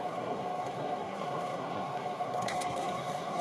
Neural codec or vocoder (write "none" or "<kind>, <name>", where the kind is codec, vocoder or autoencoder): codec, SNAC